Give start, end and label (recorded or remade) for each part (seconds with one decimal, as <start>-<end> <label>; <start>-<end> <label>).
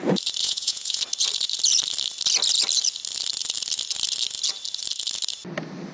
0.0-0.4 recorded; 0.4-1.0 remade; 1.0-5.9 recorded